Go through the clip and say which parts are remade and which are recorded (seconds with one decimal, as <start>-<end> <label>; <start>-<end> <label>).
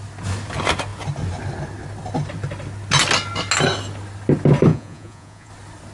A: 0.0-4.7 recorded; 4.7-5.5 remade; 5.5-5.9 recorded